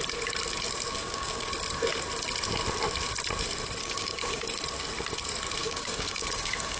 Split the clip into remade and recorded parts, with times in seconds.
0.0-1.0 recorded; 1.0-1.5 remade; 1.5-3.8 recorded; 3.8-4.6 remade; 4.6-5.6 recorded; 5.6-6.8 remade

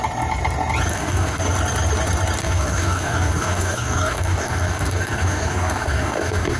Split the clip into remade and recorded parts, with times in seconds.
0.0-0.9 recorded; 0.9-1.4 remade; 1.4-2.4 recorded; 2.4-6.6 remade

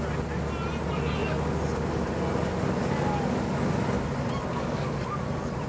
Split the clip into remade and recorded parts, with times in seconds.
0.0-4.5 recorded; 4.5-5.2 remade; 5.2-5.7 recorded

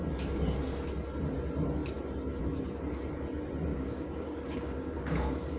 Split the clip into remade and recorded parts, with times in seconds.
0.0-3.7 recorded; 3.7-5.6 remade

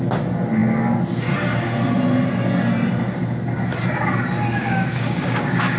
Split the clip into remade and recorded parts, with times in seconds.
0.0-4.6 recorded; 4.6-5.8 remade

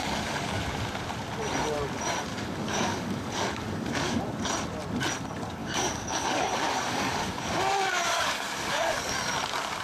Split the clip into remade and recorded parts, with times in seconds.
0.0-0.6 remade; 0.6-2.3 recorded; 2.3-4.2 remade; 4.2-5.6 recorded; 5.6-9.1 remade; 9.1-9.8 recorded

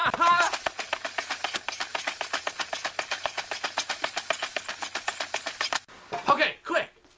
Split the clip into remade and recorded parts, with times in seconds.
0.0-7.2 recorded